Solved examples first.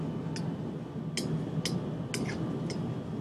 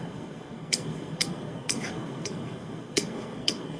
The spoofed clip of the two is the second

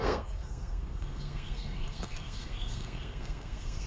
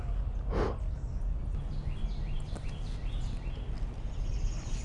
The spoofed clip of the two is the first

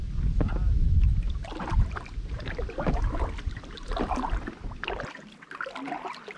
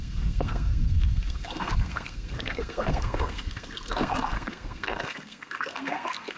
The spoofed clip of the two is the second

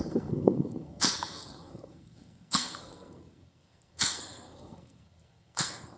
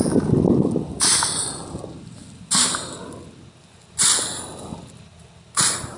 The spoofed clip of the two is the first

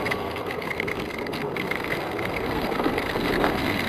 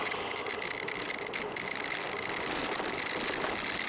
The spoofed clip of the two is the first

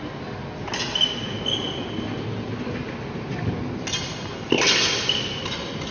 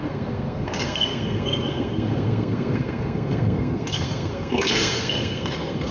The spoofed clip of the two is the second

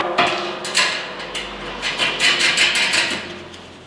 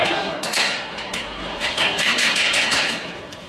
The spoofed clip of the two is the second